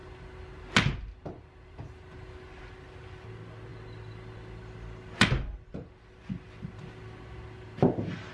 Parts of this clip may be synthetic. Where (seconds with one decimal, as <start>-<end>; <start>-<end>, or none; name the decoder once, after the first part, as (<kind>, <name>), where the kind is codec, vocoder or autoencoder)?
none